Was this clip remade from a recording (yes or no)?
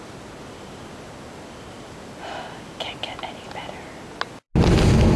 no